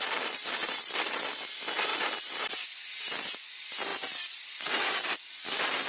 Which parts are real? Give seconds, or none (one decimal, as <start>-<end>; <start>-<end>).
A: 0.0-0.6; 1.1-1.9; 2.5-3.9; 5.3-5.9